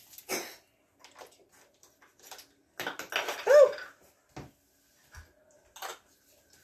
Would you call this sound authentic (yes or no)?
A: yes